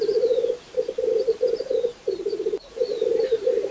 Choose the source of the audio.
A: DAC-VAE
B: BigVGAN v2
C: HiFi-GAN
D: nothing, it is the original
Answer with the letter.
B